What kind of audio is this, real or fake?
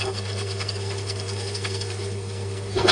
fake